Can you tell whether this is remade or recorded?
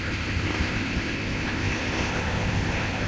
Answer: remade